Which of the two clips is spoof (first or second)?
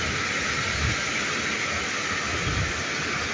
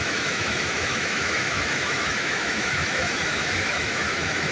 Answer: second